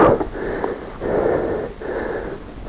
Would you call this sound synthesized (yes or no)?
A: no